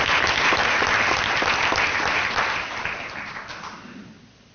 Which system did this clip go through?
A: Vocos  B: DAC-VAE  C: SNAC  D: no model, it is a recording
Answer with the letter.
D